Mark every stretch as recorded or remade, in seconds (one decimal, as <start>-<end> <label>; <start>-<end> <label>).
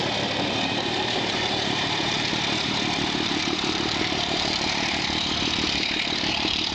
0.0-6.7 remade